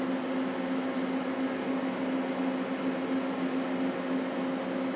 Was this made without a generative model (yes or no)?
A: yes